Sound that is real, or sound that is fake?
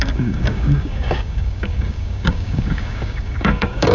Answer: fake